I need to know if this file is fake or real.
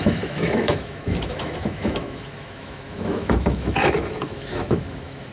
fake